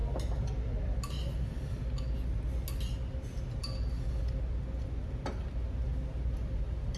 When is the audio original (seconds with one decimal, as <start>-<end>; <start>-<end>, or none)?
0.0-7.0